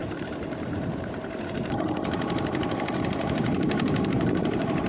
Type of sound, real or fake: fake